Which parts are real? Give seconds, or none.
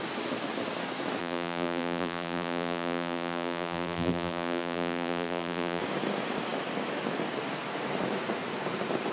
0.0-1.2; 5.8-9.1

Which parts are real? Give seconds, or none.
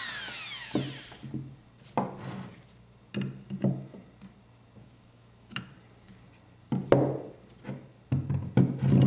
0.0-4.8; 5.6-9.1